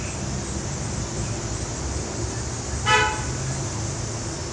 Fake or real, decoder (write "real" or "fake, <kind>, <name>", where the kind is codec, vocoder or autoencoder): real